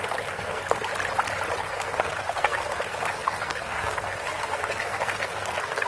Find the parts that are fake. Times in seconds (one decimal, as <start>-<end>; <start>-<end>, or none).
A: 0.0-0.9; 1.6-5.9